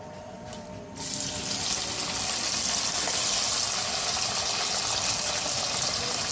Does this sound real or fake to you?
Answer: real